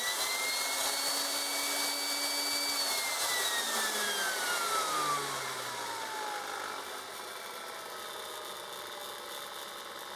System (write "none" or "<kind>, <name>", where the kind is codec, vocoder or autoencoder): none